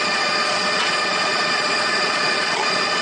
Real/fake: fake